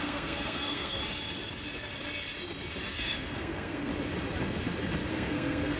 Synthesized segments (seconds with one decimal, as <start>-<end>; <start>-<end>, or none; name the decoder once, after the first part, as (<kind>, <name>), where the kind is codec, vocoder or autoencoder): 0.0-1.0 (codec, SNAC); 2.9-3.9; 5.1-5.8